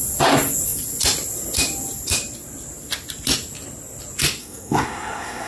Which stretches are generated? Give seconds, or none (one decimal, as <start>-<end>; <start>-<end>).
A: 4.4-5.5